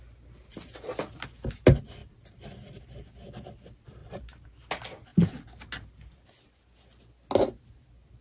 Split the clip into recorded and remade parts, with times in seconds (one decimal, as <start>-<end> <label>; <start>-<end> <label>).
0.0-4.0 recorded; 4.0-4.5 remade; 4.5-8.2 recorded